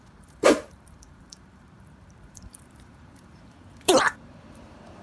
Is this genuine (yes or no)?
no